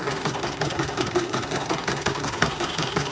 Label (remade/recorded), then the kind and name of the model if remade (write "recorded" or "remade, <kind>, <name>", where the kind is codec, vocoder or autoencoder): remade, codec, SNAC